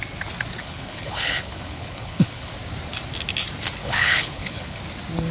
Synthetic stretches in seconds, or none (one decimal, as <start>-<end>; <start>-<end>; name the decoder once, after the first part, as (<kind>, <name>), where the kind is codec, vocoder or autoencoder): 0.6-2.5 (codec, HILCodec); 3.8-4.8